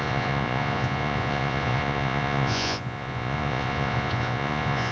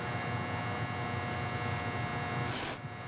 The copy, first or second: first